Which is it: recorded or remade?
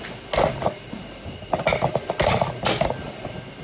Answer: recorded